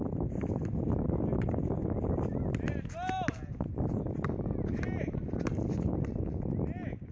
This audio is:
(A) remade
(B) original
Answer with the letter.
B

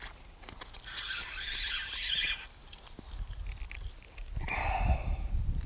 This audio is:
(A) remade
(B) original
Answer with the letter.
B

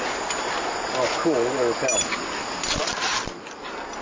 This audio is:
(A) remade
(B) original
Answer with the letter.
B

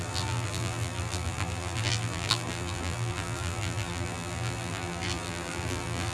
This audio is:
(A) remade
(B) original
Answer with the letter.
A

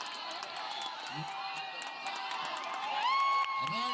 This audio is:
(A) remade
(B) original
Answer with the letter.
A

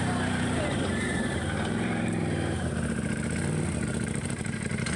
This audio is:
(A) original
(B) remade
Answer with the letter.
B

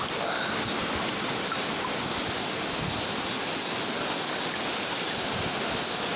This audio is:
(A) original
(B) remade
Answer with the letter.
A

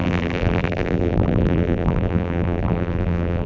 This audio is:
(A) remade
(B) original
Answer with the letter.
A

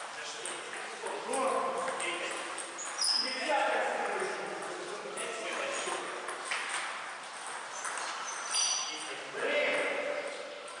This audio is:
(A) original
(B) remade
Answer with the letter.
A